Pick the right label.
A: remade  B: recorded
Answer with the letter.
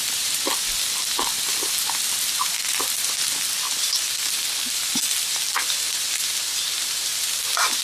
A